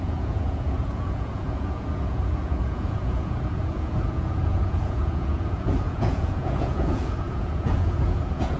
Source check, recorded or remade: remade